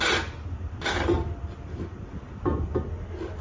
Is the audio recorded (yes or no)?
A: yes